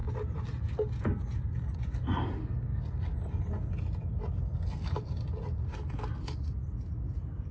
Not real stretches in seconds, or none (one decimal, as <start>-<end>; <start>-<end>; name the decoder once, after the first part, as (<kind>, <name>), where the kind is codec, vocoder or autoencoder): none